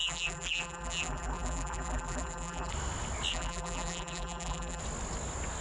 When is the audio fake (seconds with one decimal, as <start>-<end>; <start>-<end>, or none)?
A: 0.0-2.7; 3.3-4.8